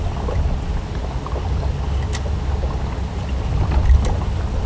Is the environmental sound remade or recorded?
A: recorded